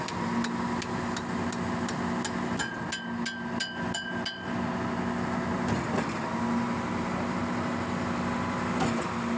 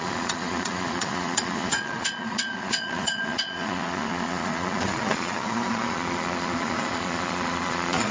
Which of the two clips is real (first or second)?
first